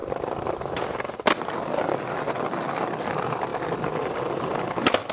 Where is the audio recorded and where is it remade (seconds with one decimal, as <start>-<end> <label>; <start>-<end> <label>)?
0.0-5.1 recorded